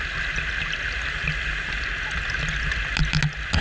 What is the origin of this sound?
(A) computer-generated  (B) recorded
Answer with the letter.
B